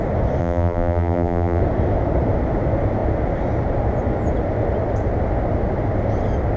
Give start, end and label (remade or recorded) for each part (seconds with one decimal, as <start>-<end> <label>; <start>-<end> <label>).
0.0-0.4 recorded; 0.4-1.6 remade; 1.6-6.6 recorded